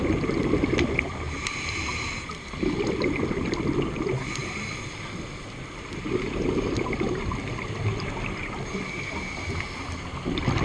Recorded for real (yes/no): yes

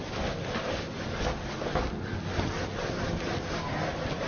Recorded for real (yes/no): yes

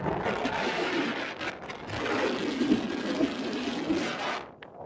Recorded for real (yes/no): yes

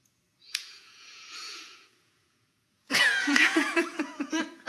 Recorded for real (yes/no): no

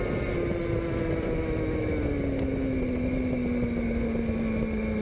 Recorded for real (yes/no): yes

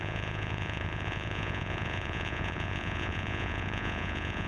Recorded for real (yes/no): no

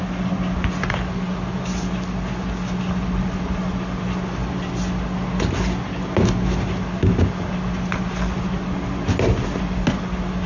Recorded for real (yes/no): yes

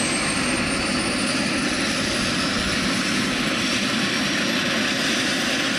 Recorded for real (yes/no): yes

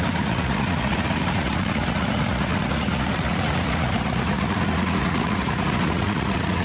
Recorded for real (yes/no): no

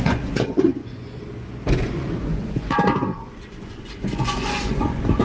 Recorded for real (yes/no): no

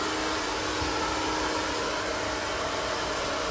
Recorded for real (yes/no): yes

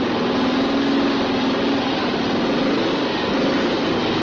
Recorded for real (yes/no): yes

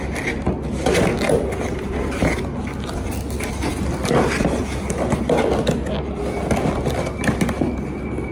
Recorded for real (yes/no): yes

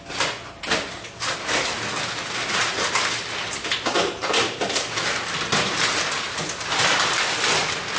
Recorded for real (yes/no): yes